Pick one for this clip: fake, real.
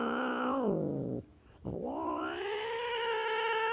fake